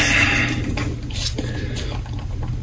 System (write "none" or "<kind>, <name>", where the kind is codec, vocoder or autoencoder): none